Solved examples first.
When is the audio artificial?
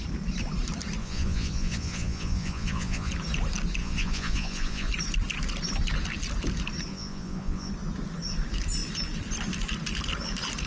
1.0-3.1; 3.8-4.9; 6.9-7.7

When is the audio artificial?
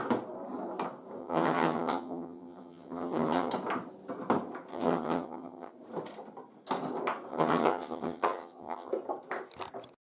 1.2-3.5; 4.7-5.7; 7.3-8.9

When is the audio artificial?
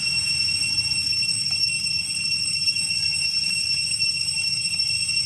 0.6-2.9; 3.9-4.8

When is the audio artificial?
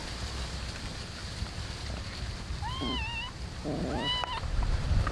0.5-1.2; 1.8-3.1; 4.5-5.1